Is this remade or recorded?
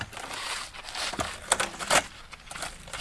recorded